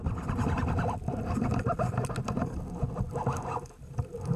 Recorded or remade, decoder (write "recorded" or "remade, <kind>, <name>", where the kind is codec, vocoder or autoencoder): recorded